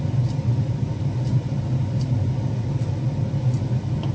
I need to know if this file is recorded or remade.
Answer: recorded